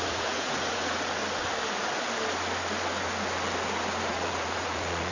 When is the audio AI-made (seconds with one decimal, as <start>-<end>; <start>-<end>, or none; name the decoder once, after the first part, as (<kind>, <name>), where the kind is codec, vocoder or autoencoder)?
0.0-1.2 (vocoder, Vocos); 4.1-5.1